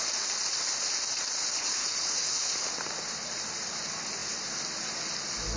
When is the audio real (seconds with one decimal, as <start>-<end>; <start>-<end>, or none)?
0.0-1.6; 2.5-5.6